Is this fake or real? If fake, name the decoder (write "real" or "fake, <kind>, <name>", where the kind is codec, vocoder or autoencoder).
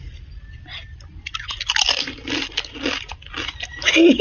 real